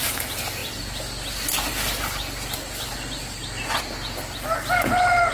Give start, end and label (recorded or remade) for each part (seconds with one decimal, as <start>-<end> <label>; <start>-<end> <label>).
0.0-5.3 recorded